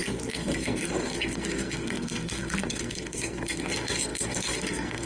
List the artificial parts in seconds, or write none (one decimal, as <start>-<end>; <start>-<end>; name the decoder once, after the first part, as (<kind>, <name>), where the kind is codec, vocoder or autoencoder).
0.0-5.1 (codec, SNAC)